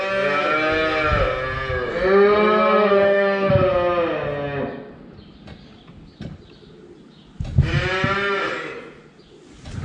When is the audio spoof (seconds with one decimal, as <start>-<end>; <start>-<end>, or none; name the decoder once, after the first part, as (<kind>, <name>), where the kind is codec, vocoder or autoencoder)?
2.9-3.5 (codec, DAC)